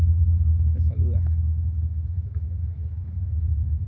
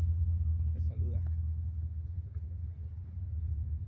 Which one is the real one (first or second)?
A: second